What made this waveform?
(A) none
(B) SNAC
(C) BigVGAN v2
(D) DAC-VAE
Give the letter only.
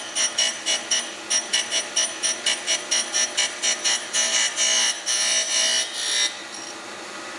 A